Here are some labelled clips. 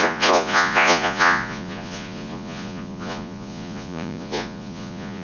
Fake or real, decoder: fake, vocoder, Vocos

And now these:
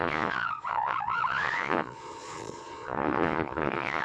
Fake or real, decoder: fake, vocoder, Vocos